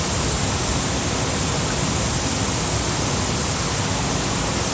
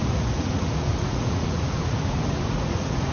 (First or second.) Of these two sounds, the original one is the first